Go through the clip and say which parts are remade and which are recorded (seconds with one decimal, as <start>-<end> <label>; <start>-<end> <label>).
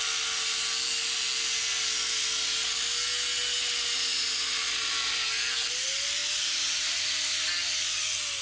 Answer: 0.0-8.4 recorded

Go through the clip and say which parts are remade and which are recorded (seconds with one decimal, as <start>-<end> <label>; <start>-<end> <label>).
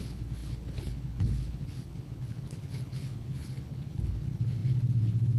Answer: 0.0-5.4 remade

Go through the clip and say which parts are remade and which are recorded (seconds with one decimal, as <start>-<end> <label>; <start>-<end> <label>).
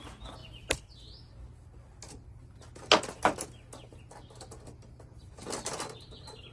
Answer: 0.0-6.5 recorded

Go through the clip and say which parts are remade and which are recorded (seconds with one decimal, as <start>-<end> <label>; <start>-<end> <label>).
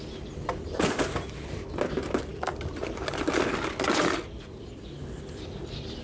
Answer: 0.0-6.0 recorded